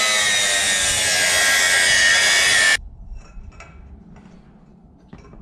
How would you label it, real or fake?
real